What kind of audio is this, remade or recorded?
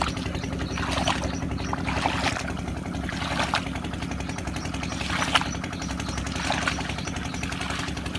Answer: recorded